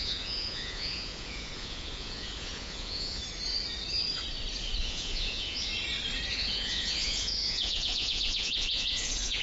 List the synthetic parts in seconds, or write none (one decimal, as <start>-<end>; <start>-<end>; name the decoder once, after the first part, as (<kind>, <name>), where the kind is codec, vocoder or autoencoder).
0.0-3.2 (vocoder, Vocos); 4.8-5.7; 6.3-9.4